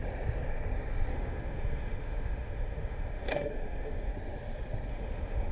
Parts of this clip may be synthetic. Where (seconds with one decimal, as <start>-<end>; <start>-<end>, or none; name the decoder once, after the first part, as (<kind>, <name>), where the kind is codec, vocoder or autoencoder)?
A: 1.1-4.1 (autoencoder, DAC-VAE); 4.9-5.5